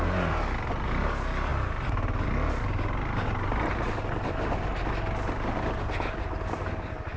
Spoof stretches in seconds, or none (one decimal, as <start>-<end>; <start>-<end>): none